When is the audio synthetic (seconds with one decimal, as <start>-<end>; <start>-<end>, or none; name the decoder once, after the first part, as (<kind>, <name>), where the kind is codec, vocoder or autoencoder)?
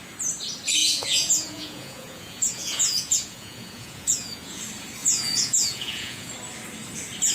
0.8-4.6 (vocoder, Vocos); 5.0-6.3